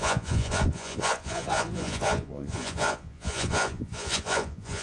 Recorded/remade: remade